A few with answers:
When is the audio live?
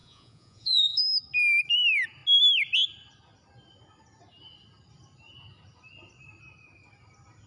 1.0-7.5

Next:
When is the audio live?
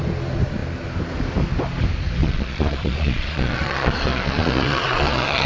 0.0-2.2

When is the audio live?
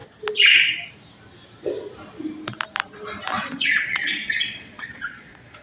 0.0-3.4